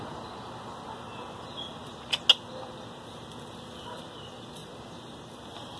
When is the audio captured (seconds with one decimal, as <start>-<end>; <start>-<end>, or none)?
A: 0.0-5.8